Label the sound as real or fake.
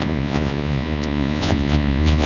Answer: fake